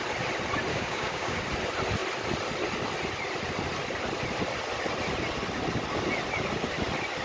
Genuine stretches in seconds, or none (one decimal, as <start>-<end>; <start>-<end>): 0.0-0.7; 1.4-7.2